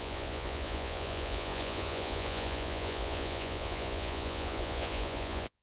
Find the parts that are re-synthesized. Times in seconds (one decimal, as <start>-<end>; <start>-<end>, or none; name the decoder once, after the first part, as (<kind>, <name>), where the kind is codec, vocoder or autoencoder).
0.0-5.6 (vocoder, Vocos)